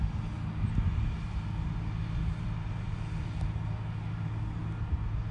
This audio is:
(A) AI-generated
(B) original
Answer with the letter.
B